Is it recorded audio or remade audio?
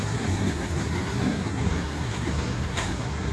remade